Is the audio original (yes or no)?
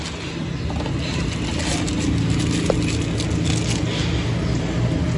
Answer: yes